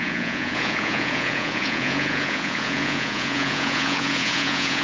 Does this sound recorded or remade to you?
remade